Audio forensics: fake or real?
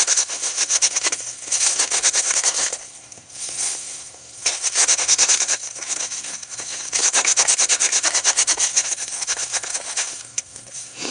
fake